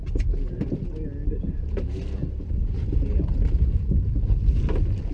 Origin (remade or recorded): recorded